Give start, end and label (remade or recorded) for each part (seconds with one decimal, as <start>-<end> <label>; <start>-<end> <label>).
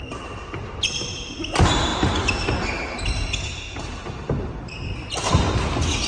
0.0-6.1 recorded